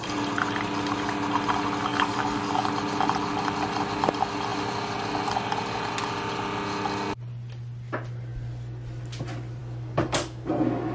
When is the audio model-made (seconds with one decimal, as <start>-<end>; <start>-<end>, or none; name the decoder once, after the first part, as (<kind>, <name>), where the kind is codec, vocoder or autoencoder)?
1.9-2.7 (codec, DAC); 9.6-10.5